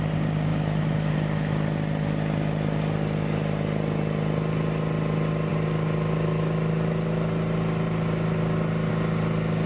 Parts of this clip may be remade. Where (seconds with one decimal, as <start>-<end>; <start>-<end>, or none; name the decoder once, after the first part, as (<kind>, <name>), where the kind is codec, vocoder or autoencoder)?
0.5-1.1 (autoencoder, DAC-VAE)